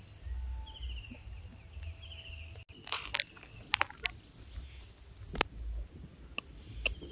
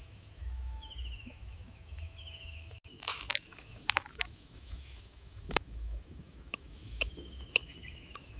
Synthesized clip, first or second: second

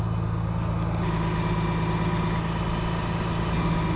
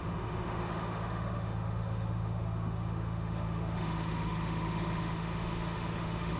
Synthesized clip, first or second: second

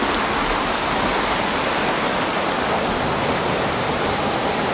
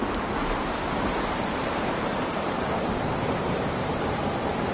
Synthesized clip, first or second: second